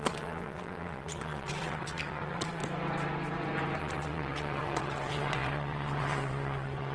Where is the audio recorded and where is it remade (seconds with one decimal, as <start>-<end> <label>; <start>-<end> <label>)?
0.0-2.6 remade; 2.6-3.8 recorded; 3.8-6.9 remade